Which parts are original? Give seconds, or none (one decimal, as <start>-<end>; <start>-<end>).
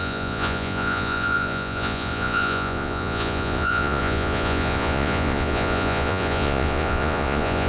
none